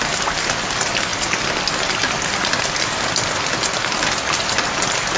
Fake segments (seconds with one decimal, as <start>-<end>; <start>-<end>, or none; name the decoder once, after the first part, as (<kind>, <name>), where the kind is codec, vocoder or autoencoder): none